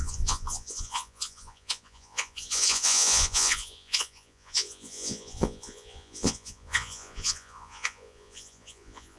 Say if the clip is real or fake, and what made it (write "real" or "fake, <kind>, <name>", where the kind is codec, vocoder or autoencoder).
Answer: fake, vocoder, Vocos